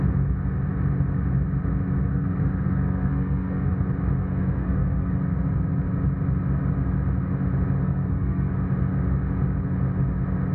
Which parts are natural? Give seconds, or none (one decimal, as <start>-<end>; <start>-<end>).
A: 0.0-2.1; 3.7-4.2; 5.1-7.8; 8.5-10.5